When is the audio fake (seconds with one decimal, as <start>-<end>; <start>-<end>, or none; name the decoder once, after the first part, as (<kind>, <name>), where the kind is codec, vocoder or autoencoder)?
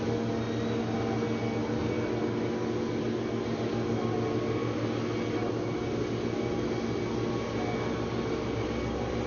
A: none